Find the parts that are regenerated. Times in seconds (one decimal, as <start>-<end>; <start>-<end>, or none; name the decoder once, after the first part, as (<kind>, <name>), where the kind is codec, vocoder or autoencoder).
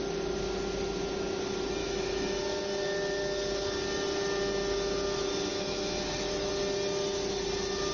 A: 1.8-2.4 (autoencoder, DAC-VAE); 5.5-6.5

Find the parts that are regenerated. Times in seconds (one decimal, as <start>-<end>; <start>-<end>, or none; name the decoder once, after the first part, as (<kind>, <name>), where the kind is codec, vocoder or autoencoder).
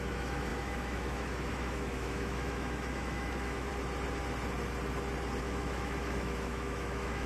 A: 0.0-3.7 (autoencoder, DAC-VAE); 5.4-7.3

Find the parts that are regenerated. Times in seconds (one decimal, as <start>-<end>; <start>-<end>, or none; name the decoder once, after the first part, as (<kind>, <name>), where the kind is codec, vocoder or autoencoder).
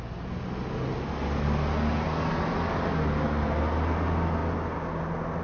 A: none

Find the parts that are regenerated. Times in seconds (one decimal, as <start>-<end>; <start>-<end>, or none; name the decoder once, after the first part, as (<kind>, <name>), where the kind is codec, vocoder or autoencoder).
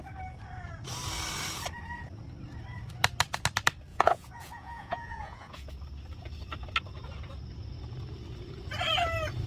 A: 3.9-5.7 (vocoder, Vocos)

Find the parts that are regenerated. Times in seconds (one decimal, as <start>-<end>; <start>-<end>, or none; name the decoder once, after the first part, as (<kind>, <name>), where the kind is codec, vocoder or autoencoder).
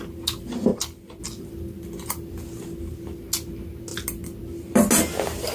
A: none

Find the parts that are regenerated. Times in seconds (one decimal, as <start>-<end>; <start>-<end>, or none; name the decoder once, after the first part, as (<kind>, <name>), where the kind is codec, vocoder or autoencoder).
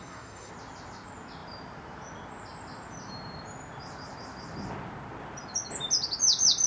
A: 0.0-0.5 (codec, SNAC)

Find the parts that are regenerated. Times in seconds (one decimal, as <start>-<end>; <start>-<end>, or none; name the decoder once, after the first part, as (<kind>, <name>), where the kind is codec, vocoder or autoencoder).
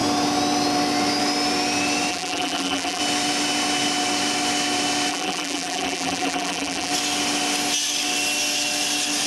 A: 2.1-3.0 (vocoder, BigVGAN v2); 5.1-6.9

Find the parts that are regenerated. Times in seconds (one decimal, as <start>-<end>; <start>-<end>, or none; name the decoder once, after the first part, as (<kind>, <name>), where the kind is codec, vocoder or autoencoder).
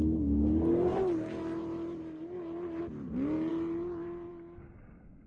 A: 0.9-2.8 (vocoder, BigVGAN v2); 3.5-4.3